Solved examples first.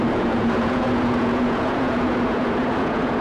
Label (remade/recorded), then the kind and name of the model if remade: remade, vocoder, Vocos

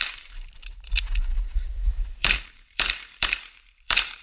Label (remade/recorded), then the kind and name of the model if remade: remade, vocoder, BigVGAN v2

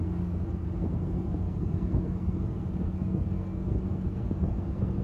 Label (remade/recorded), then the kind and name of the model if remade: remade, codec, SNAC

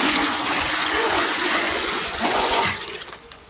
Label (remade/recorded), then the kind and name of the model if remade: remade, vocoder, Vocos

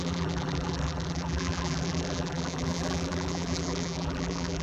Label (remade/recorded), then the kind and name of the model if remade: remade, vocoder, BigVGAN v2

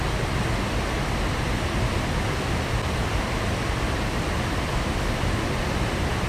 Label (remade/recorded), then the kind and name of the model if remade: recorded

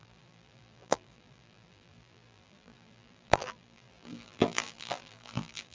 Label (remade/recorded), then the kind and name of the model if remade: remade, vocoder, BigVGAN v2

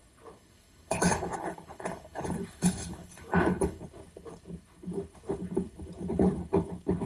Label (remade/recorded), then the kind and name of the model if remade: remade, codec, HILCodec